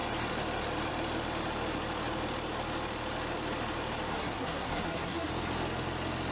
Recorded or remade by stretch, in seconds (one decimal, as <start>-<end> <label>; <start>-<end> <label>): 0.0-4.1 recorded; 4.1-5.3 remade; 5.3-6.3 recorded